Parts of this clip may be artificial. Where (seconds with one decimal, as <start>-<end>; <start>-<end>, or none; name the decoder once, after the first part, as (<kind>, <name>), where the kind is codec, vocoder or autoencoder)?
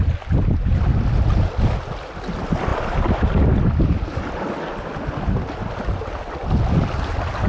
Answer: none